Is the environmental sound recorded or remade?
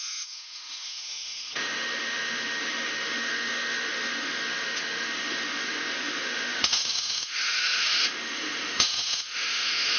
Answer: remade